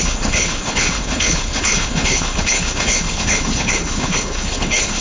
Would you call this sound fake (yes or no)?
yes